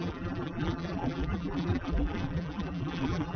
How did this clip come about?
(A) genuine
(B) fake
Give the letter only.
B